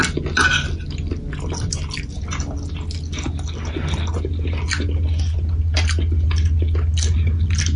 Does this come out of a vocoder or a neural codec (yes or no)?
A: no